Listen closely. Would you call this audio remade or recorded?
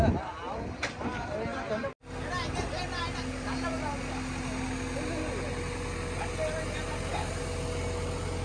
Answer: recorded